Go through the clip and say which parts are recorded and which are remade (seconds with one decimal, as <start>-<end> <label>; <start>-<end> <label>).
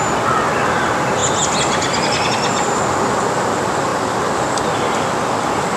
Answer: 0.0-1.2 recorded; 1.2-2.3 remade; 2.3-5.8 recorded